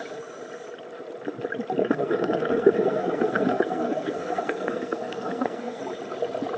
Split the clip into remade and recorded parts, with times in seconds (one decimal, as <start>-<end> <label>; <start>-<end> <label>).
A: 0.0-1.8 recorded; 1.8-5.8 remade; 5.8-6.6 recorded